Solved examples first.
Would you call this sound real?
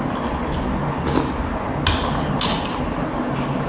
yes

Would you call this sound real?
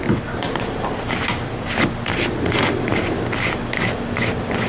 yes